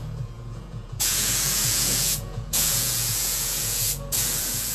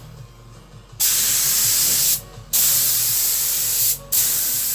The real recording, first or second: second